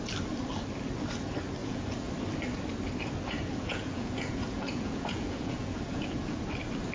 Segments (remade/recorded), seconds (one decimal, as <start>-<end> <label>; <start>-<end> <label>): 0.0-1.6 recorded; 1.6-2.1 remade; 2.1-3.5 recorded; 3.5-6.4 remade; 6.4-6.9 recorded